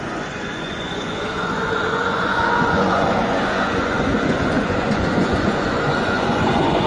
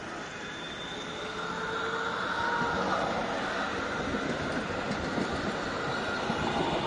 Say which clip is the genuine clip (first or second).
second